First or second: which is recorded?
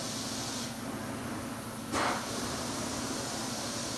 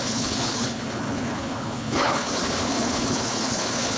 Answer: first